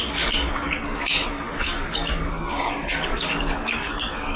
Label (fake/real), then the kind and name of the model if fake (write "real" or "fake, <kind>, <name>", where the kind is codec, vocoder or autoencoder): fake, codec, DAC